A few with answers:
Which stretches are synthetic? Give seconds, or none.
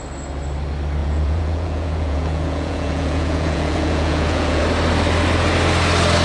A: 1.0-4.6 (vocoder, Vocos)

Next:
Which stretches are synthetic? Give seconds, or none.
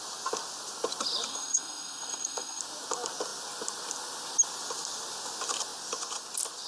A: 1.3-2.6 (codec, SNAC)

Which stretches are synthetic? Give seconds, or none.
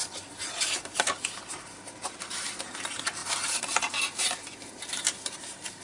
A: 0.6-5.8 (vocoder, BigVGAN v2)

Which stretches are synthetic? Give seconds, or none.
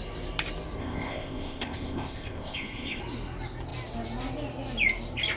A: 0.8-3.0 (codec, ZipCodec)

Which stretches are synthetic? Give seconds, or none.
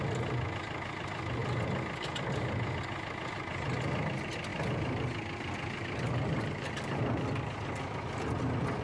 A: none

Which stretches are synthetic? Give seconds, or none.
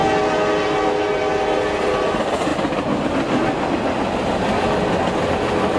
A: none